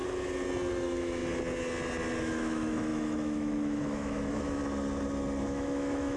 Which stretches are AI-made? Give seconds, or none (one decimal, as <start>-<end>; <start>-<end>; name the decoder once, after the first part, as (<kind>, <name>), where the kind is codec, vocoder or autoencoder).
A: 0.7-1.2 (autoencoder, DAC-VAE); 2.2-4.6; 5.4-6.2